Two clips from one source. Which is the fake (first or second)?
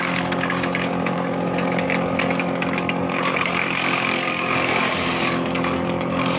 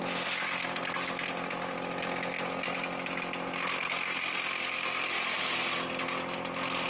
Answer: first